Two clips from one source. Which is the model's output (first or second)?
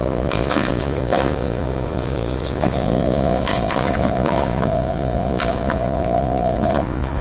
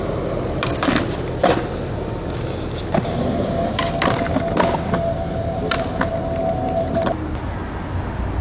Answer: first